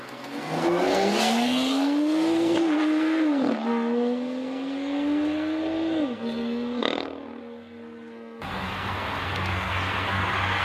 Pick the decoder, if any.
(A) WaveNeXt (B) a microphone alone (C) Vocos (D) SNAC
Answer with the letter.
D